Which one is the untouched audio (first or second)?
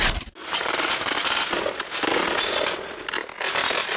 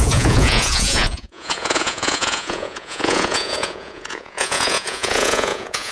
first